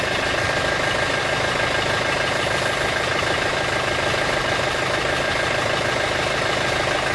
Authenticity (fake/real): real